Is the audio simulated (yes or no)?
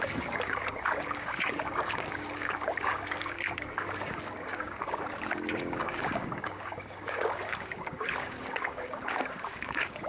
yes